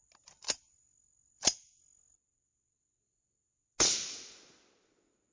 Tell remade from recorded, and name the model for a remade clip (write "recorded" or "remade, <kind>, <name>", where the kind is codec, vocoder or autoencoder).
recorded